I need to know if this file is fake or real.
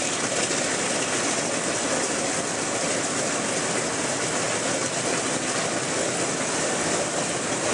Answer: real